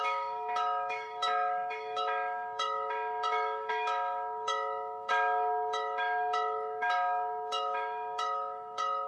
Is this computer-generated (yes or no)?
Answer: yes